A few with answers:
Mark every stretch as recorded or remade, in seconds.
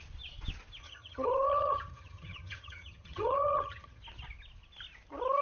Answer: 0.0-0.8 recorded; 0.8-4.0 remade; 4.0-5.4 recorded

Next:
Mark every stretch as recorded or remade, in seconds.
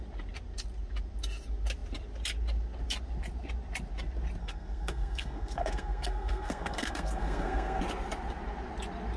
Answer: 0.0-4.4 recorded; 4.4-7.8 remade; 7.8-9.2 recorded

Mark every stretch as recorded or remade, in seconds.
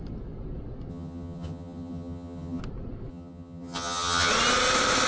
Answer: 0.0-0.9 recorded; 0.9-2.6 remade; 2.6-3.1 recorded; 3.1-4.3 remade; 4.3-5.1 recorded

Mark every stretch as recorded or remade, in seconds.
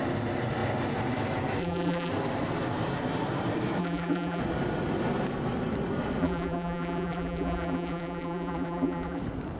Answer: 0.0-1.6 recorded; 1.6-2.1 remade; 2.1-3.8 recorded; 3.8-4.4 remade; 4.4-6.2 recorded; 6.2-9.2 remade; 9.2-9.6 recorded